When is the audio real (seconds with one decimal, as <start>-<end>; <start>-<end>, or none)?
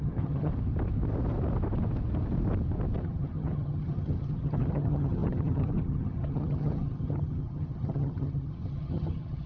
0.5-3.0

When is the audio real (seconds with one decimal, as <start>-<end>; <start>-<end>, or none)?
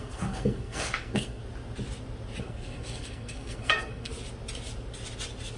1.4-2.4; 4.1-5.6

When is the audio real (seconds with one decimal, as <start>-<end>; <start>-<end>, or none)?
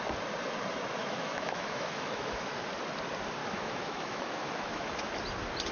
0.0-1.0; 2.5-3.4; 5.0-5.7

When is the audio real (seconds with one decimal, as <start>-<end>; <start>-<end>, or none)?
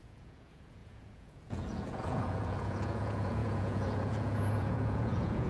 none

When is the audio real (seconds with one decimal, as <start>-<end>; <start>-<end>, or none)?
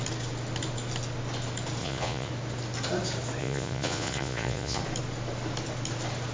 0.0-1.8; 2.3-3.4; 4.8-6.3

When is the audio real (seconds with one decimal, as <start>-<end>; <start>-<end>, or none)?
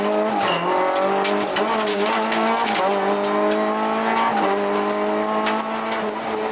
0.0-1.9; 2.8-6.5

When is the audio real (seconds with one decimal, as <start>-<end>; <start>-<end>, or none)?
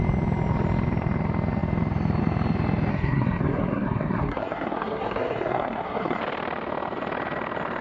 0.0-2.9; 6.2-7.8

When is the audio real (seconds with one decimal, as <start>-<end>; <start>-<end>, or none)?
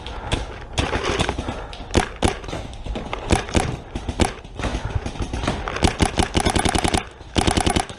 0.0-8.0